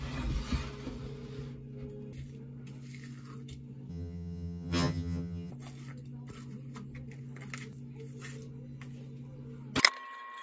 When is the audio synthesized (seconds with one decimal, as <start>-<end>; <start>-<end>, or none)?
3.9-5.5